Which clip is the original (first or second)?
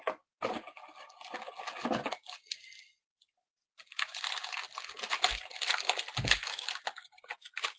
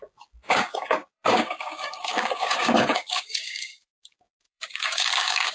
first